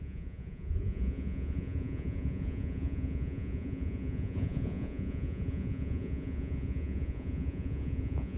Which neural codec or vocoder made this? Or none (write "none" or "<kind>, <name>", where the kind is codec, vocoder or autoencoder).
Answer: vocoder, Vocos